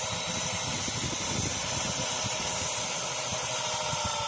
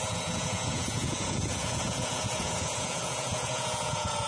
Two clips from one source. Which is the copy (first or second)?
second